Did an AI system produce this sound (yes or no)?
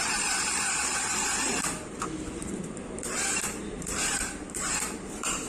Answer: yes